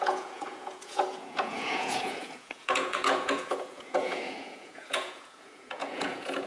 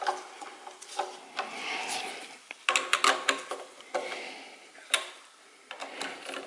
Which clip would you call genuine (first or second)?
second